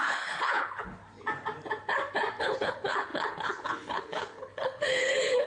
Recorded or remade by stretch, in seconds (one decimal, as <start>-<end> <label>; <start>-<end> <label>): 0.0-1.0 remade; 1.0-2.4 recorded; 2.4-5.5 remade